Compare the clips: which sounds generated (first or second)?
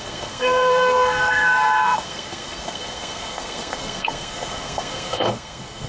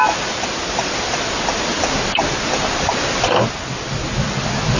first